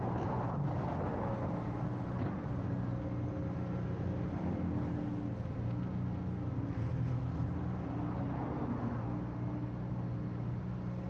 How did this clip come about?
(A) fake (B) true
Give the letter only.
B